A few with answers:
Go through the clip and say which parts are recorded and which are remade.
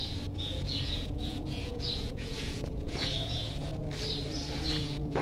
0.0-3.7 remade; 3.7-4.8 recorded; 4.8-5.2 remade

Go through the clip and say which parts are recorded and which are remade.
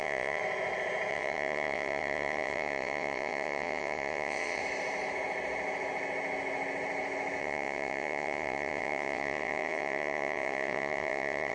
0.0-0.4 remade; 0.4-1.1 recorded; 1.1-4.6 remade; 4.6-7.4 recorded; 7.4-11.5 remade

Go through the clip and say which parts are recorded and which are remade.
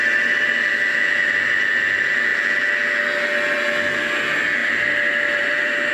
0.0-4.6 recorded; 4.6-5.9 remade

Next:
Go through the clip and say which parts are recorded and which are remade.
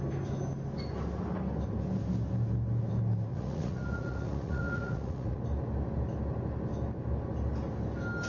0.0-3.3 recorded; 3.3-5.4 remade; 5.4-8.3 recorded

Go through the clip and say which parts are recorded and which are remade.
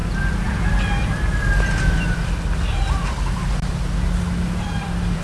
0.0-5.2 remade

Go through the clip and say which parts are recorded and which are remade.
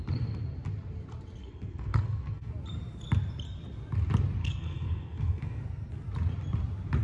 0.0-1.4 recorded; 1.4-2.5 remade; 2.5-4.4 recorded; 4.4-5.6 remade; 5.6-7.0 recorded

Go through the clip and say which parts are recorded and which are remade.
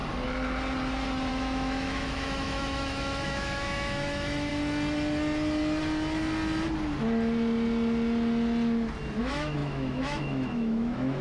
0.0-1.3 recorded; 1.3-4.5 remade; 4.5-9.2 recorded; 9.2-11.2 remade